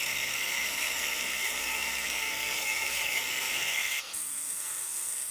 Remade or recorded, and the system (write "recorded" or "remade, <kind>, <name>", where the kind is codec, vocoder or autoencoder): remade, codec, SNAC